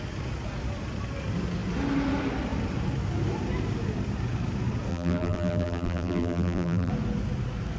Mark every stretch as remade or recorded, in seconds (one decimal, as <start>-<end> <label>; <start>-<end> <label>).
0.0-4.9 recorded; 4.9-6.9 remade; 6.9-7.8 recorded